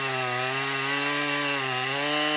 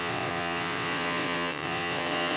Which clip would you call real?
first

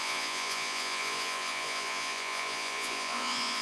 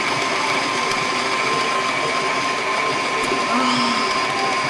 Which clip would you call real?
second